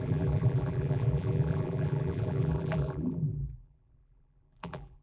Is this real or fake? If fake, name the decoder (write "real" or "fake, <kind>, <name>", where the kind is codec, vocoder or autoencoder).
fake, vocoder, BigVGAN v2